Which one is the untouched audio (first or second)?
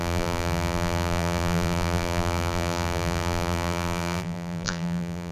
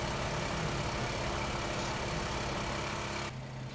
second